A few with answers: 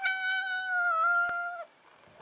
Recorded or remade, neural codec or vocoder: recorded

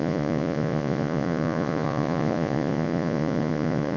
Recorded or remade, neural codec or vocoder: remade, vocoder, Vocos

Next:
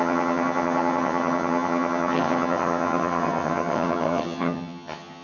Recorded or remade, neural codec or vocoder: remade, vocoder, HiFi-GAN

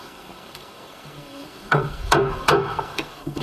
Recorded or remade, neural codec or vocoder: remade, codec, SNAC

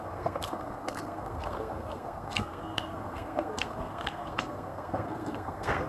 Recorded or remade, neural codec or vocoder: remade, codec, SNAC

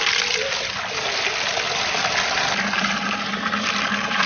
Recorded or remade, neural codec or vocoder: recorded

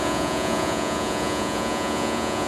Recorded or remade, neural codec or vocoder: remade, vocoder, Vocos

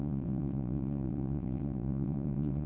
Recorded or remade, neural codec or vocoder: remade, vocoder, WaveNeXt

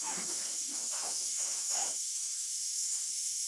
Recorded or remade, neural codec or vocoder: remade, autoencoder, DAC-VAE